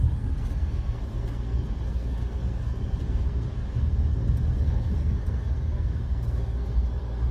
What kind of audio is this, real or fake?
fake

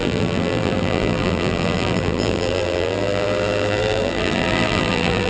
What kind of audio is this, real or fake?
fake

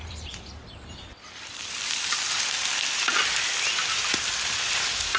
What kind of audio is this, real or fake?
fake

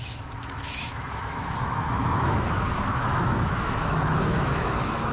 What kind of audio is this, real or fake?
fake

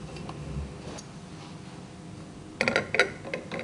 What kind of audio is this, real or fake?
real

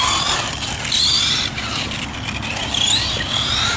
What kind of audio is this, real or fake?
fake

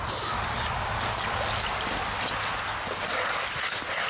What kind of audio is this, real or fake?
real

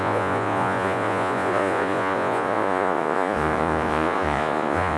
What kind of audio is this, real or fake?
fake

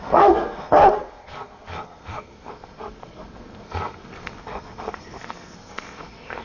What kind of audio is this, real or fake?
fake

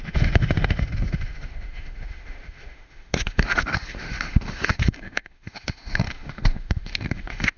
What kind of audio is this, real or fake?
fake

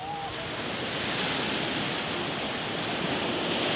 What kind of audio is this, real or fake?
real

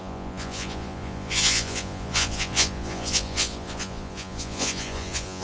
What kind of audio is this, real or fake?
fake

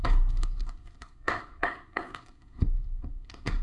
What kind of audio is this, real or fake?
fake